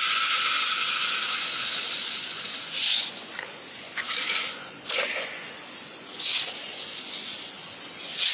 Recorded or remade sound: remade